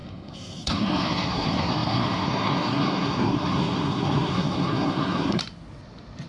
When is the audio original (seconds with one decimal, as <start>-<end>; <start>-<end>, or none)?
5.4-6.3